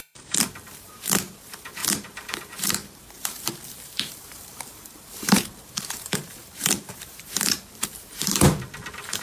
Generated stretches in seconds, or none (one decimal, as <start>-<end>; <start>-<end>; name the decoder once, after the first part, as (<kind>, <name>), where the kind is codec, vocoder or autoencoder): 0.0-9.2 (vocoder, BigVGAN v2)